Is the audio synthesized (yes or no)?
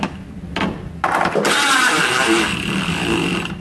no